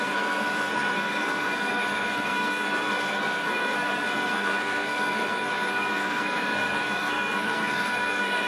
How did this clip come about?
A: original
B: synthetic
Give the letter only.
B